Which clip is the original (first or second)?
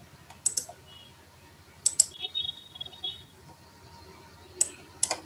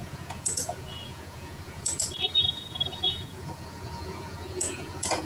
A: first